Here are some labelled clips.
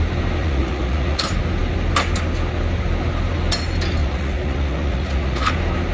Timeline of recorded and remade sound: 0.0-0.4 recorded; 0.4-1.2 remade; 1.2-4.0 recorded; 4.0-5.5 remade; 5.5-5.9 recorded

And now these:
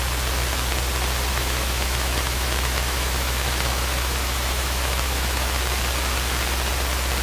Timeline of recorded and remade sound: 0.0-1.3 recorded; 1.3-5.6 remade; 5.6-7.2 recorded